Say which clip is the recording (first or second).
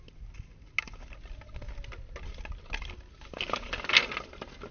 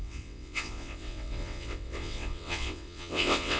first